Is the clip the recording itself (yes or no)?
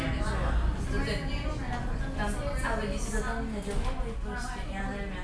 yes